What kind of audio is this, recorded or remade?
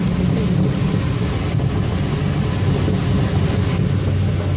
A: recorded